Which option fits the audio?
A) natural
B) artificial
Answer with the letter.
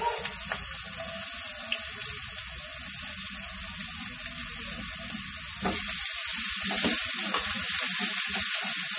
A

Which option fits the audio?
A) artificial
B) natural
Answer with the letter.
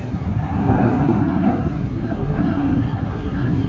A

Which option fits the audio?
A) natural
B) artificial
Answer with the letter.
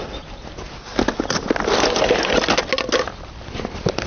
A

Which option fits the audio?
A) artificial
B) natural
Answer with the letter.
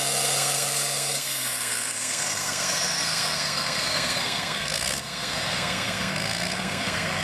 A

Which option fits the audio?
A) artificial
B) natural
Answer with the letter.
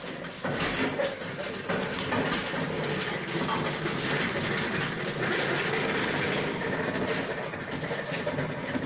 B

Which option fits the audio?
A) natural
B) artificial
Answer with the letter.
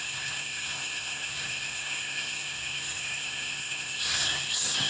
B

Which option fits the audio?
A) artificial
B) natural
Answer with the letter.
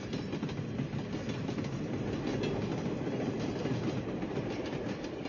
B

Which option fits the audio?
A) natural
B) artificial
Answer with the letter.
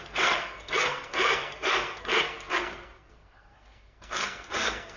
B